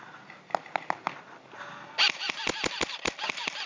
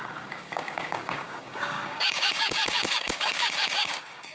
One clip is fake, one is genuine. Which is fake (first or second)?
second